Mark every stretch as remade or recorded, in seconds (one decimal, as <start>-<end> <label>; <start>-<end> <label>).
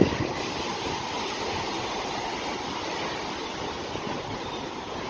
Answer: 0.0-5.1 recorded